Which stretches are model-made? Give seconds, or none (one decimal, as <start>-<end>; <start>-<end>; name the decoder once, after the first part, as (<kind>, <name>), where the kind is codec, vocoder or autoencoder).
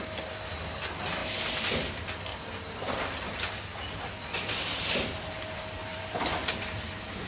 5.8-7.3 (vocoder, BigVGAN v2)